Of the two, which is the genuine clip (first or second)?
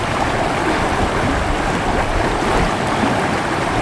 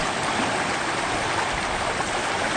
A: second